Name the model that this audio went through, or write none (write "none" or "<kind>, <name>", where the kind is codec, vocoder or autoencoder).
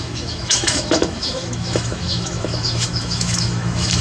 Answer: autoencoder, DAC-VAE